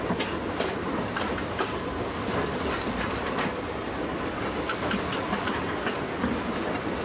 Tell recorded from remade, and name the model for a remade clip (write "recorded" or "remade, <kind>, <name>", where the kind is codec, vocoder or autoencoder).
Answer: recorded